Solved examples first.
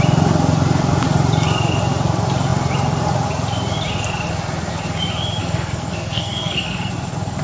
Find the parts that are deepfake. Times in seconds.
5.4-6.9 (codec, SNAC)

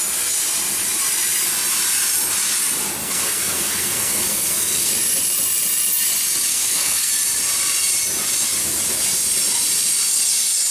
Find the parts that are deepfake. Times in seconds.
3.0-4.9 (codec, SNAC); 6.5-7.1